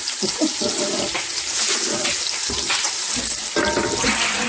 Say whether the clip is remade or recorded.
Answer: recorded